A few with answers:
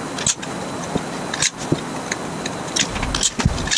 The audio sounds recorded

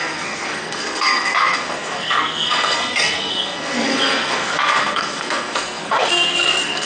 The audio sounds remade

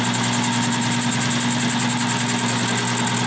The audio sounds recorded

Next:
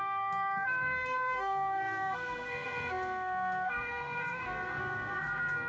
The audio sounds remade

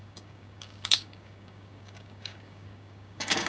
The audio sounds remade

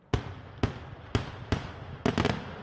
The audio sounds recorded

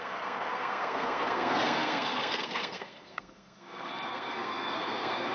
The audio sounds remade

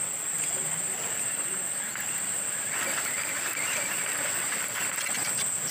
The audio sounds recorded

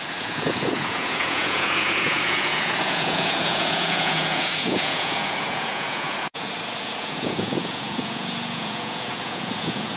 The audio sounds remade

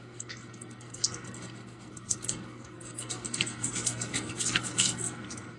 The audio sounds remade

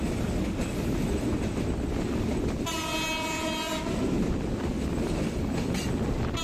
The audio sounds recorded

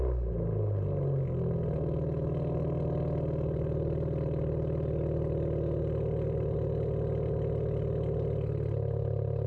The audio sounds recorded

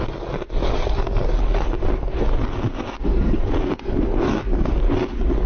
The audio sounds recorded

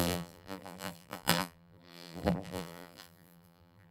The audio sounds remade